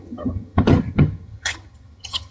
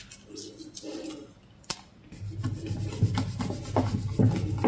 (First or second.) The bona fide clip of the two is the second